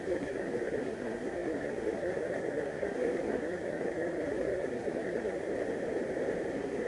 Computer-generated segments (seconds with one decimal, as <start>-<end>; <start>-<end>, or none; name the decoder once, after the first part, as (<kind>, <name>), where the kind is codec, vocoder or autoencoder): 0.0-5.5 (codec, SNAC); 6.5-6.9